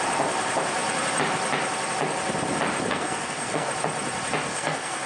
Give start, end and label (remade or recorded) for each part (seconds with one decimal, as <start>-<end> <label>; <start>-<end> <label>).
0.0-2.9 recorded; 2.9-3.7 remade; 3.7-4.5 recorded; 4.5-5.1 remade